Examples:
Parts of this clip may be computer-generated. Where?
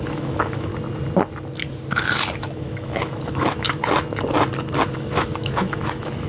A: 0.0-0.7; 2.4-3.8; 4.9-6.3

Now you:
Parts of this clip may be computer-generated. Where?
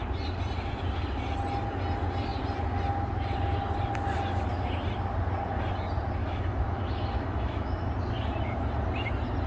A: 6.2-7.9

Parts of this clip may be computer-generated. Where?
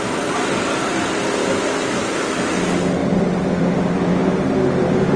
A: 1.4-2.2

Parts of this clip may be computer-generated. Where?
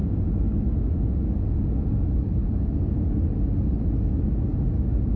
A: none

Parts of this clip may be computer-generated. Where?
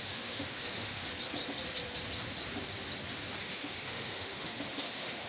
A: 0.0-1.1; 3.4-5.3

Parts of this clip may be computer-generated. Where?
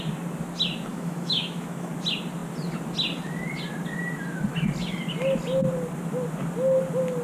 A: 0.9-1.9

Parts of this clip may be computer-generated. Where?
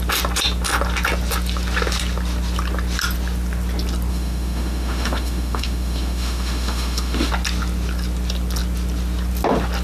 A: 4.1-7.3